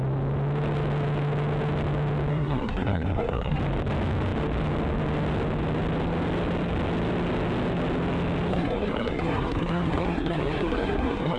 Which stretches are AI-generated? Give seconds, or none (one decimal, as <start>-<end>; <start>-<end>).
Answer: 2.3-3.6; 8.5-11.4